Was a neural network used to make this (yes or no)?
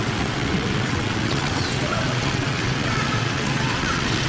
yes